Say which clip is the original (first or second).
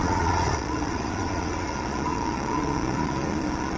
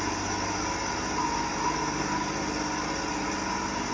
second